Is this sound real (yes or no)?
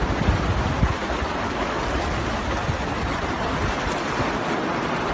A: yes